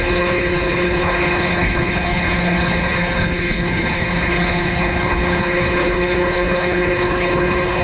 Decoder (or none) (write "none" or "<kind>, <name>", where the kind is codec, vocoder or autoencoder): codec, HILCodec